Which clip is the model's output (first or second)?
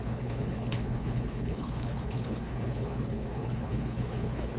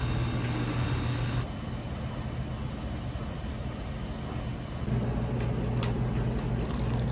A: first